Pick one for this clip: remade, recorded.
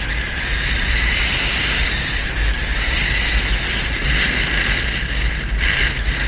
recorded